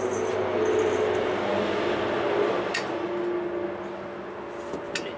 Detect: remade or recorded recorded